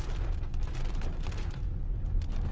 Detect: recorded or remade recorded